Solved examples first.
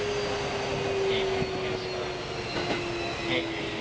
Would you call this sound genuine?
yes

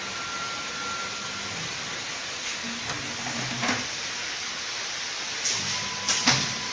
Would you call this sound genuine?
yes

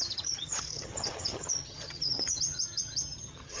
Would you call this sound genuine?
no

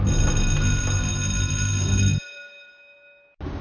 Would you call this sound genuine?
yes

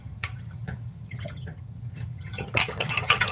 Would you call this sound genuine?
no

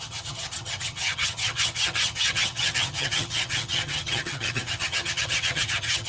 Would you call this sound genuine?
no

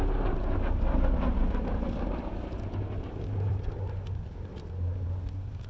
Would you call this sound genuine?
yes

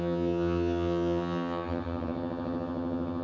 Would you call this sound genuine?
no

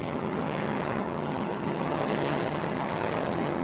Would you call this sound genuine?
no